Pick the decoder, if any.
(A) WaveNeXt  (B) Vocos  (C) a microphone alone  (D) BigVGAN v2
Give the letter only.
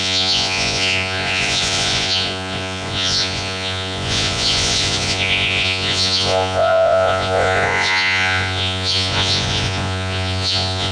B